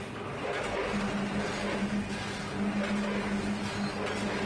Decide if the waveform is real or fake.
real